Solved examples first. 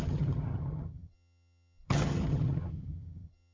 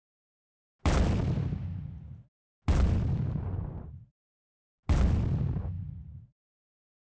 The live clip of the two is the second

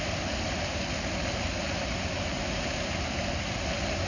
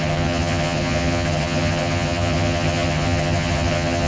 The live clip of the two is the first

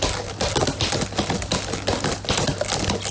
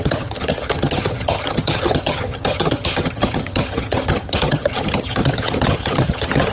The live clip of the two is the first